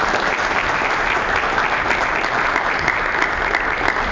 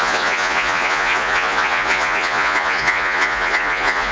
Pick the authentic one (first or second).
first